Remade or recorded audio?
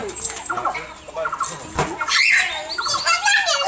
recorded